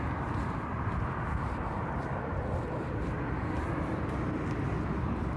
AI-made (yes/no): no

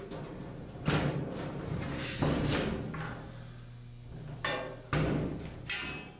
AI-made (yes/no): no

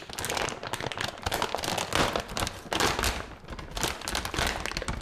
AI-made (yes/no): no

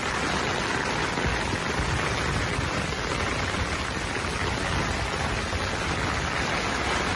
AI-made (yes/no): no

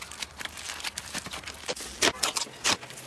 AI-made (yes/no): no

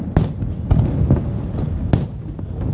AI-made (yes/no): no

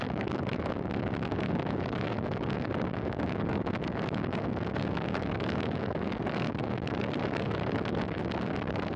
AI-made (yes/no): yes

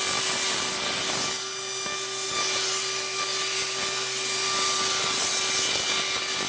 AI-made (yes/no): no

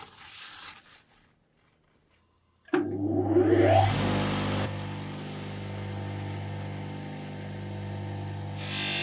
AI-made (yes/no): no